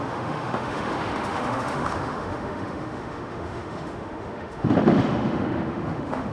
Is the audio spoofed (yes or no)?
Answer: yes